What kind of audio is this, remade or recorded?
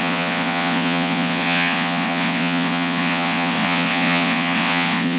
remade